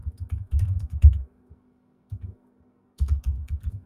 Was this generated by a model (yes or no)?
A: yes